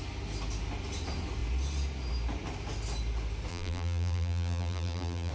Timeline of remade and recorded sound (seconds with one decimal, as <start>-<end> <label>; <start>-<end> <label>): 0.0-3.5 recorded; 3.5-5.3 remade